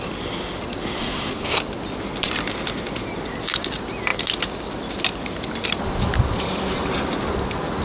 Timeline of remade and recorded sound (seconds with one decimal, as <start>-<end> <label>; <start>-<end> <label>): 0.0-1.0 recorded; 1.0-1.6 remade; 1.6-7.8 recorded